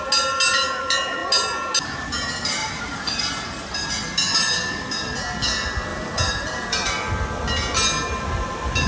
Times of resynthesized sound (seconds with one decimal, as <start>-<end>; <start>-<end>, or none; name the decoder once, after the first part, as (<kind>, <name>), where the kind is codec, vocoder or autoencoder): 2.6-3.9 (vocoder, BigVGAN v2); 5.9-6.9